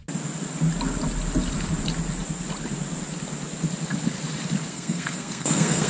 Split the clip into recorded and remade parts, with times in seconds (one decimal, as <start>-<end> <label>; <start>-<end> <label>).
0.0-4.7 recorded; 4.7-5.9 remade